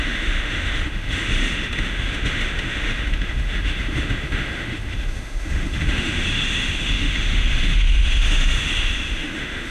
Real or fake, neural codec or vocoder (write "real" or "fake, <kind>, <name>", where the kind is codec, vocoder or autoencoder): fake, autoencoder, DAC-VAE